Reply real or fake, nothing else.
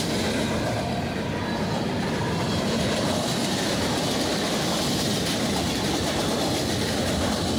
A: real